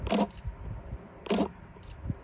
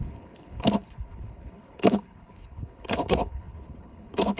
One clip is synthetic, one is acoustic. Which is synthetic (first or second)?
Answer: second